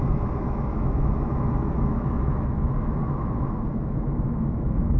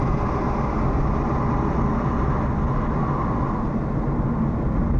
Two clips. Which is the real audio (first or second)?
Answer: second